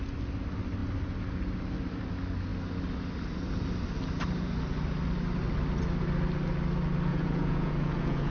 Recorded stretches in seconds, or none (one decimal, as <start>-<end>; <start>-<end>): 0.0-7.1